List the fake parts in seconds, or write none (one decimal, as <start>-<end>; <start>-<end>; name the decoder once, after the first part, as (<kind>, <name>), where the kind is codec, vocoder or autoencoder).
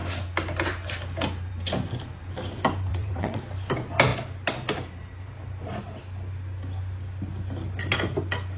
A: 2.9-3.4 (vocoder, WaveNeXt)